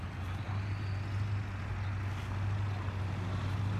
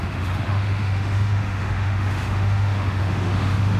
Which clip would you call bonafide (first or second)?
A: first